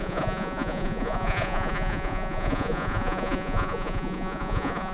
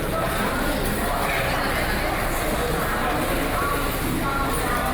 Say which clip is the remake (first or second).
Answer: first